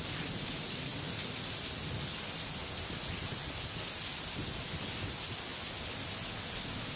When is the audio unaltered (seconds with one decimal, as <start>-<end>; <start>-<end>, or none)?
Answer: 0.0-7.0